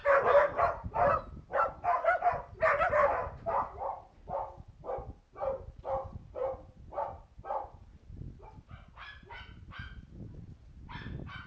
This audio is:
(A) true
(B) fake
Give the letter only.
A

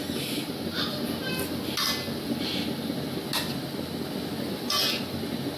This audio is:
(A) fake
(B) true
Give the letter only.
B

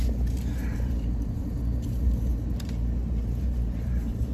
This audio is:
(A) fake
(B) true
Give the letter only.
A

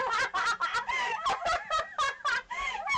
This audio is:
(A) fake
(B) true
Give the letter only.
A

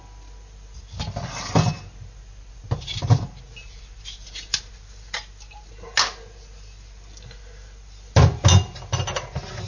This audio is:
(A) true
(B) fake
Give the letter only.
A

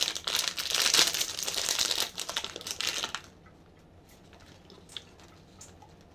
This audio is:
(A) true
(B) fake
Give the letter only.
A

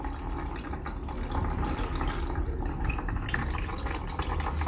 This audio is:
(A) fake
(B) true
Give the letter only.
B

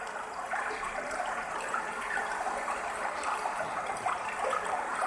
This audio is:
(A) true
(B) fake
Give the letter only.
B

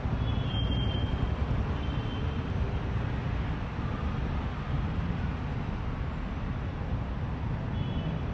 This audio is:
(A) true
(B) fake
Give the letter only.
A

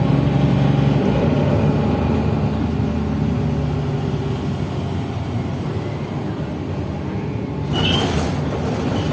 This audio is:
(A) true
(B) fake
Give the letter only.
A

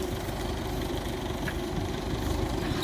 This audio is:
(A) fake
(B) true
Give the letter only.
A